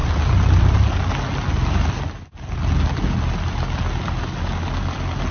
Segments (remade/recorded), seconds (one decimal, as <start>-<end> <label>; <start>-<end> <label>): 0.0-5.3 recorded